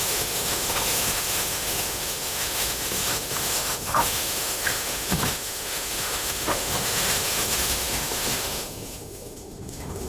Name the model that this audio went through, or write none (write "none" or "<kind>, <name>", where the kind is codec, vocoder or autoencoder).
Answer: autoencoder, DAC-VAE